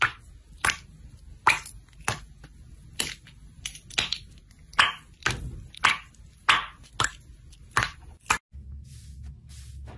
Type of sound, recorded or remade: recorded